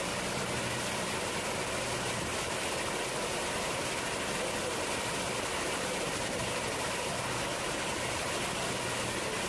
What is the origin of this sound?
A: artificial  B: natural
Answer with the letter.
B